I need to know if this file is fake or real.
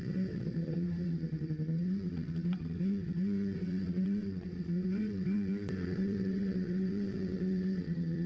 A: fake